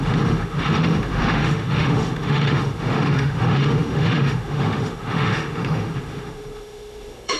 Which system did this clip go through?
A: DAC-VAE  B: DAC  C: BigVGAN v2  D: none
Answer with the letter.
A